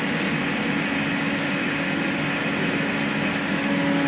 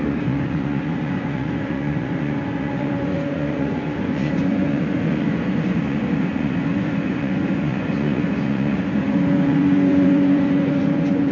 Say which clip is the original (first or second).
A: first